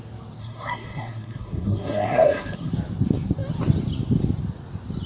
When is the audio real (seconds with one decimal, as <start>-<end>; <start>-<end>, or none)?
0.0-0.4; 2.7-5.1

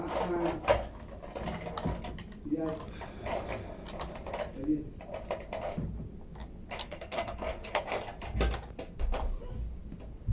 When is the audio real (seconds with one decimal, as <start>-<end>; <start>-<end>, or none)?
0.0-6.8; 7.8-10.3

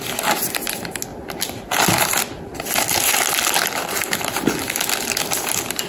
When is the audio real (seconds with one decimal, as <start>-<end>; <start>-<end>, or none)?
0.0-5.9

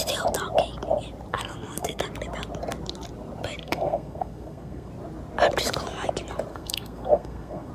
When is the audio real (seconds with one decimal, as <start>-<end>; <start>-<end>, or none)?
0.0-1.3; 2.0-3.6; 4.9-6.5

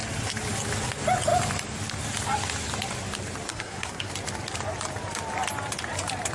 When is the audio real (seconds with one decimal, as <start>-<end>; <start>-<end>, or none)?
0.0-3.5; 4.1-6.3

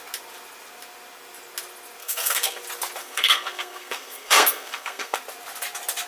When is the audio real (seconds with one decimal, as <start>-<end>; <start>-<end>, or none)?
0.0-2.0; 2.6-3.0; 5.2-6.1